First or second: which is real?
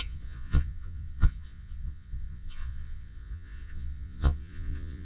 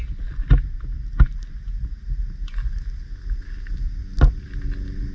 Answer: second